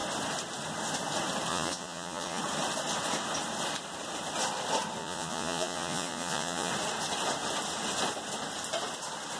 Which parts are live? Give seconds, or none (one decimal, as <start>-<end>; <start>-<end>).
0.0-1.5; 2.4-5.0; 6.7-9.4